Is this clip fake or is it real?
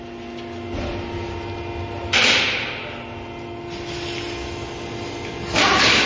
real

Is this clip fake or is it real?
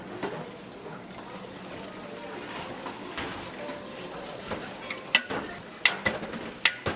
real